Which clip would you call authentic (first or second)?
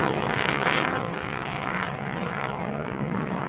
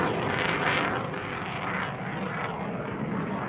second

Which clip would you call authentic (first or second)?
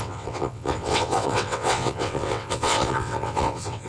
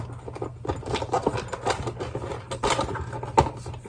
second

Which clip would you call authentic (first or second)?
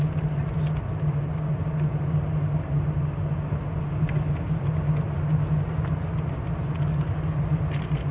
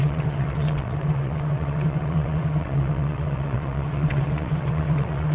first